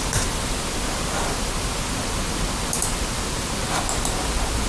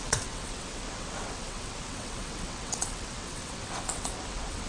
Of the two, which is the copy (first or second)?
second